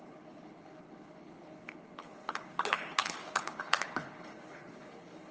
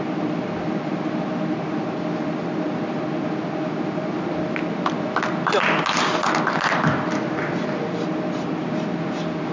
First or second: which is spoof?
first